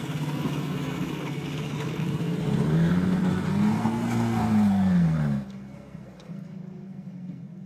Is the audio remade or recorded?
remade